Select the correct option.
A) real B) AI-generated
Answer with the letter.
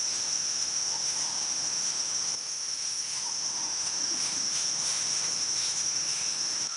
B